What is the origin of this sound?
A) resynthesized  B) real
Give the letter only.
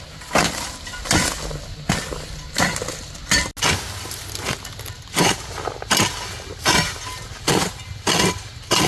B